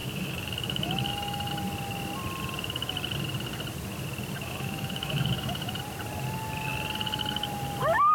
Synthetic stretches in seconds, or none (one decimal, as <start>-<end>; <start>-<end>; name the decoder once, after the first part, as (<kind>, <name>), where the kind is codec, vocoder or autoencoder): 0.0-1.5 (autoencoder, DAC-VAE); 4.4-5.7